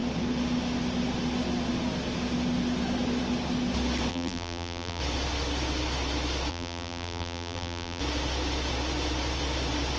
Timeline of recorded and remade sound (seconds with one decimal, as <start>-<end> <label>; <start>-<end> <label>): 0.0-4.1 recorded; 4.1-5.0 remade; 5.0-6.5 recorded; 6.5-8.0 remade; 8.0-10.0 recorded